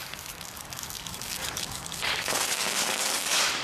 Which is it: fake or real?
fake